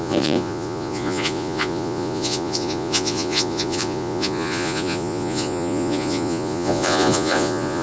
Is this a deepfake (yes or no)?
yes